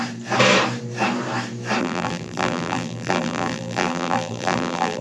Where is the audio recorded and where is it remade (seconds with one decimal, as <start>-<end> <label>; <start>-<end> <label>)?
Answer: 0.0-1.8 recorded; 1.8-5.0 remade